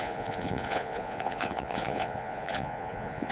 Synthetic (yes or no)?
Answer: yes